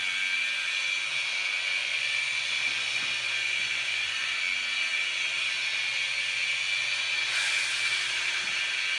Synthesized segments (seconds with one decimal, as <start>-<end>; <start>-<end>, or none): 1.8-4.4